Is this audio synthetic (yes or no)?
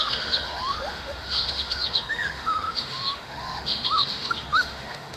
yes